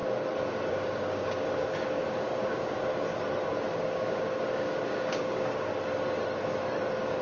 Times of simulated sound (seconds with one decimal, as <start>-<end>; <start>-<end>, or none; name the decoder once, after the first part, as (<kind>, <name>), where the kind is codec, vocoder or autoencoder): 0.7-2.9 (codec, DAC); 3.8-5.7